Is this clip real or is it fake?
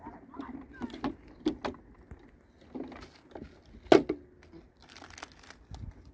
real